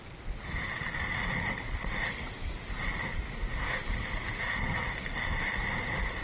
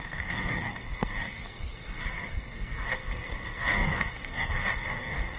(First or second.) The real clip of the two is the first